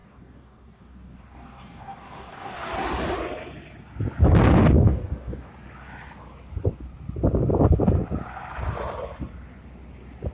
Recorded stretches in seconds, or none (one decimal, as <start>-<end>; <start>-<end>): 2.7-4.4; 5.5-10.3